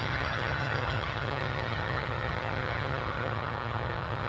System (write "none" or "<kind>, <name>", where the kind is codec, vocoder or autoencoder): vocoder, HiFi-GAN